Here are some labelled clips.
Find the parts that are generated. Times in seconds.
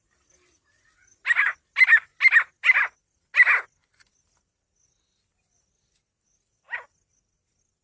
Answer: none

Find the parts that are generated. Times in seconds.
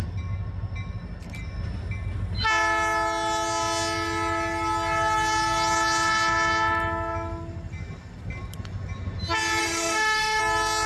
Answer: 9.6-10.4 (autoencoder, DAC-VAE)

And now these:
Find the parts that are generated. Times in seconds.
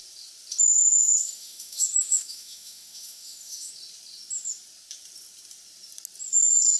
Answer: 0.7-3.7 (autoencoder, DAC-VAE)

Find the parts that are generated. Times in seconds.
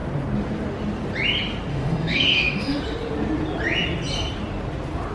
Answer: 1.7-2.8 (autoencoder, DAC-VAE)